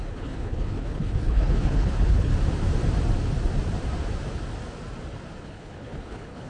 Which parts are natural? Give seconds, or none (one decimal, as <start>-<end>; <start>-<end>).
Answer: 2.3-5.4